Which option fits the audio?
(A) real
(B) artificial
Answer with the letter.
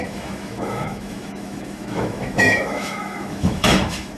B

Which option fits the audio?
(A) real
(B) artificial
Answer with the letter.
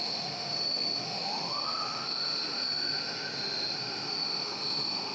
B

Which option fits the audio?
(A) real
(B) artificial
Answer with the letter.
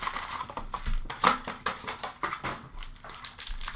A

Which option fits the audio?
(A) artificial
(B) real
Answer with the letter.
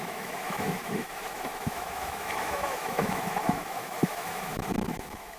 A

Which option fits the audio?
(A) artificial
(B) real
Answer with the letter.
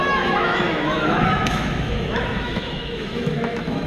A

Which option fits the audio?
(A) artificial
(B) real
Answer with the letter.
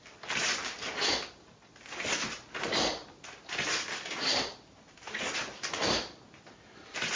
B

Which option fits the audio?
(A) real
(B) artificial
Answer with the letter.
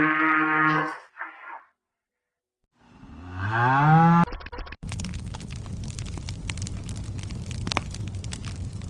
A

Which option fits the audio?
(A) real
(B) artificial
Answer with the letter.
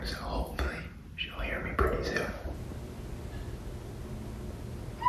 A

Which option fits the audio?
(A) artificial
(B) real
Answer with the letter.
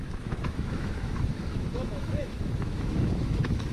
A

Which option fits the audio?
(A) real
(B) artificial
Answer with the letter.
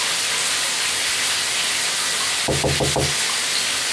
A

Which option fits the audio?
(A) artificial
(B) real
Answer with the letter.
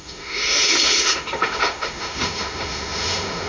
A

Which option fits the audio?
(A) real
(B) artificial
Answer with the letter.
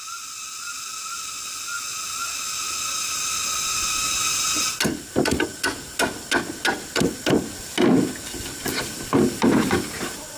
A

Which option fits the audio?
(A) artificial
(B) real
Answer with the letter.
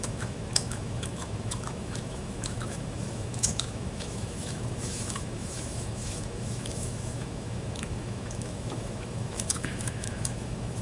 A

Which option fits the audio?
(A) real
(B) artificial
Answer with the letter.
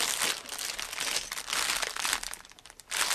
A